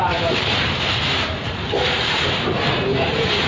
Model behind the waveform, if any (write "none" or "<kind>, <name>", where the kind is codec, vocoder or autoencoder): vocoder, BigVGAN v2